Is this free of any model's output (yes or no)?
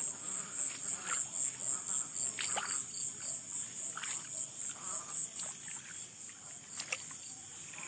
yes